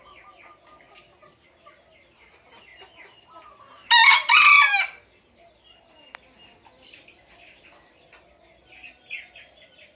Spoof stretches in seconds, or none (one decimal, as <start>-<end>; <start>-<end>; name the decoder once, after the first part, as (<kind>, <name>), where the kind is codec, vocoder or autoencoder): none